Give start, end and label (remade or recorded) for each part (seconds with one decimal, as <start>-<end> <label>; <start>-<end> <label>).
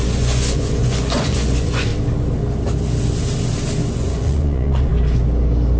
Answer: 0.0-1.9 remade; 1.9-3.9 recorded; 3.9-4.9 remade; 4.9-5.8 recorded